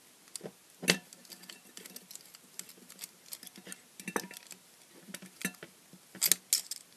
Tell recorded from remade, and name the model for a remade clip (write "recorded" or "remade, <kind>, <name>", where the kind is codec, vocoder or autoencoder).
recorded